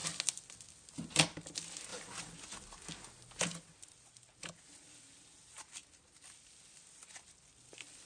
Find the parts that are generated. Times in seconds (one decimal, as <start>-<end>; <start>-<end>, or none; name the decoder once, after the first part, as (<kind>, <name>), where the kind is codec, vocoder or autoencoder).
none